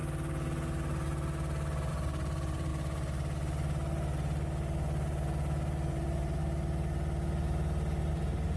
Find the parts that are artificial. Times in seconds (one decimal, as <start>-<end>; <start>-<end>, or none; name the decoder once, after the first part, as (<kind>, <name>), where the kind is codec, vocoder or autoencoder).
1.9-2.7 (vocoder, BigVGAN v2); 5.9-6.4; 8.1-8.6